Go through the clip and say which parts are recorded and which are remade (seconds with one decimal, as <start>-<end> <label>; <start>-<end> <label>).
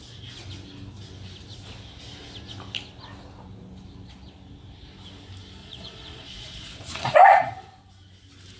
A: 0.0-5.6 recorded; 5.6-7.5 remade; 7.5-8.6 recorded